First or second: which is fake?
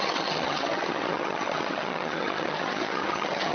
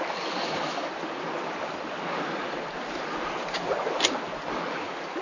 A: first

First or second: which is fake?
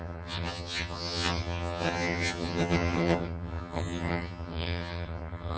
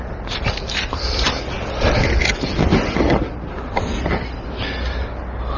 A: first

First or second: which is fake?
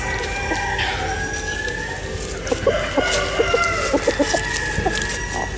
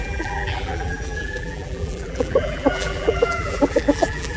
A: second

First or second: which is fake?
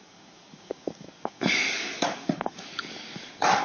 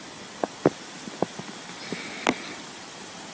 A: first